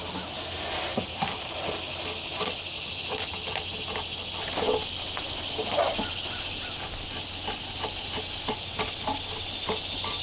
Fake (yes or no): no